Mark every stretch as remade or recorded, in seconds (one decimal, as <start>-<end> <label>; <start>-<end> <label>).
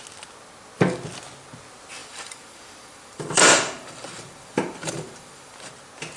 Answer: 0.0-2.0 recorded; 2.0-5.7 remade; 5.7-6.2 recorded